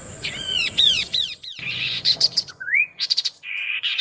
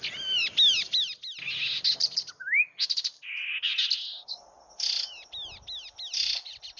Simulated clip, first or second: first